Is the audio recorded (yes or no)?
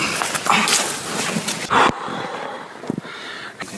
yes